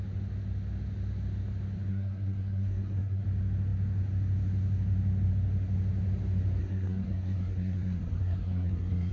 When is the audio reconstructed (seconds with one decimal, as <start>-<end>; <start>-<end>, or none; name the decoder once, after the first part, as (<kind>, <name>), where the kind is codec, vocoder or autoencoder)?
1.9-3.2 (codec, SNAC); 6.6-9.1